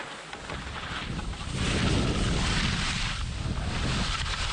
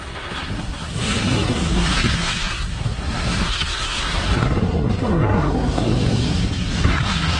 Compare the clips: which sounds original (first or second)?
first